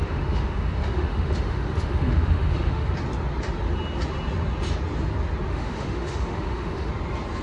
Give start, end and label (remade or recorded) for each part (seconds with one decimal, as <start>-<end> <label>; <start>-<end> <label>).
0.0-2.9 remade; 2.9-5.5 recorded; 5.5-6.9 remade; 6.9-7.4 recorded